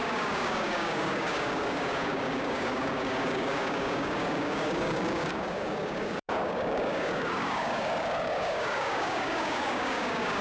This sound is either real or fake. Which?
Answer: fake